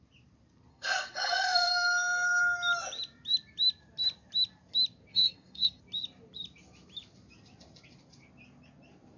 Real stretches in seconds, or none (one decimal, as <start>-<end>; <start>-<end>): 0.0-0.7; 2.4-5.1; 5.8-9.2